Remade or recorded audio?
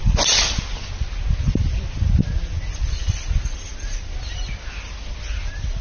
recorded